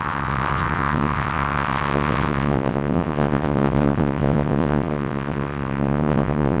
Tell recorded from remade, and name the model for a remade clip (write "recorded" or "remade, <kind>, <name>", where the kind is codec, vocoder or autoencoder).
remade, vocoder, WaveNeXt